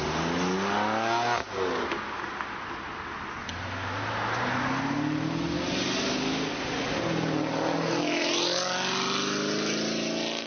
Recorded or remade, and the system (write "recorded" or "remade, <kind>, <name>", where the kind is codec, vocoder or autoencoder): recorded